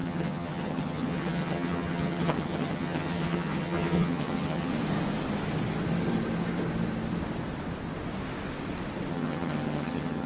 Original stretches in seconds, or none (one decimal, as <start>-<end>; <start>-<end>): 4.7-9.1